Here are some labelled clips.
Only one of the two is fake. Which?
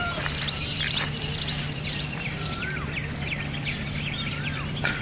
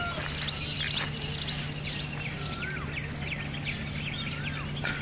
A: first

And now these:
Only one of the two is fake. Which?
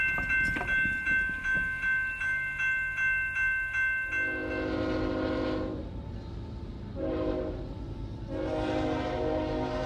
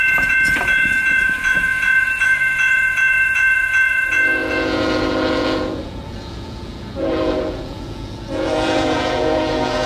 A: second